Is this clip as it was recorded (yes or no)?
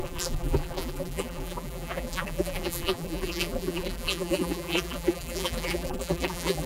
no